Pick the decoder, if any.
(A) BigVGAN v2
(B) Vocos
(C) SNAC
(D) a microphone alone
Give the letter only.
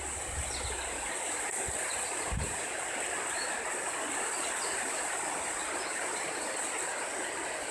D